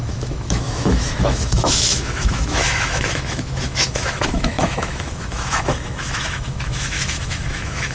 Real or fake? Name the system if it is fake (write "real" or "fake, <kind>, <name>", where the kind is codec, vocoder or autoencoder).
fake, autoencoder, DAC-VAE